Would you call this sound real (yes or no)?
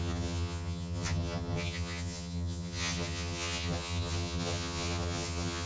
no